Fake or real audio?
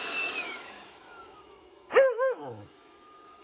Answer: fake